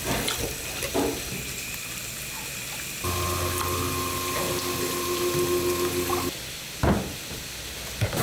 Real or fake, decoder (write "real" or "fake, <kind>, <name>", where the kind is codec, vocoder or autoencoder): real